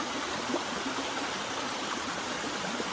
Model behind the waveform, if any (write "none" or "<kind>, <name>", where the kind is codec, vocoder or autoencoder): none